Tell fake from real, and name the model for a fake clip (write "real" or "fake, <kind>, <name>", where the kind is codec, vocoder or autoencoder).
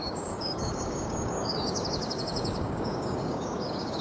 fake, codec, DAC